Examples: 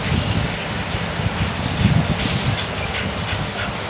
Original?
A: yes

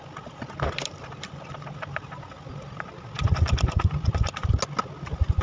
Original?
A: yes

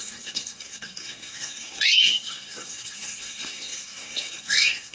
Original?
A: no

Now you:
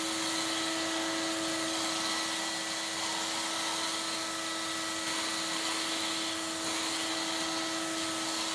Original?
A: yes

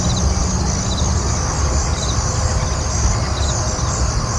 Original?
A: yes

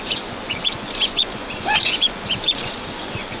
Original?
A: no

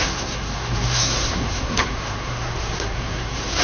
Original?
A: no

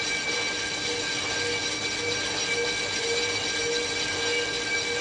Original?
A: yes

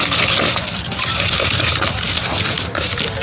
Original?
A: yes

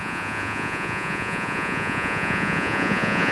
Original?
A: no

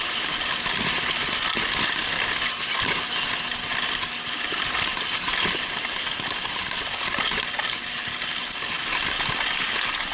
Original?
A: yes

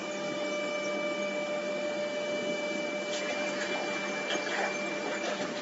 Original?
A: yes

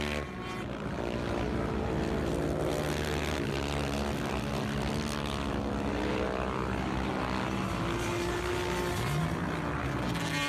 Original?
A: yes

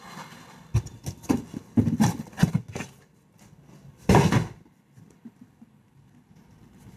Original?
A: yes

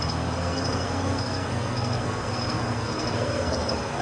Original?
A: no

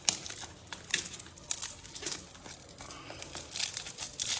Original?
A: yes